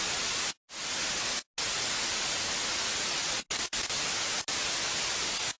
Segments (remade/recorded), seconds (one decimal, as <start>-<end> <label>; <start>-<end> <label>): 0.0-5.6 recorded